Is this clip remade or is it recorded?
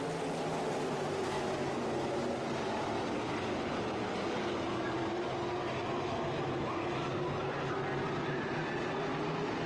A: recorded